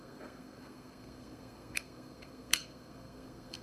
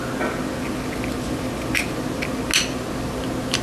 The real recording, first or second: second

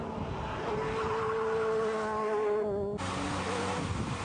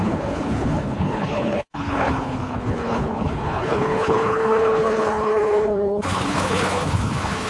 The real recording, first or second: first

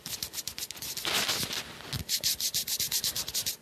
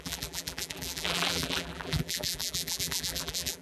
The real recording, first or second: first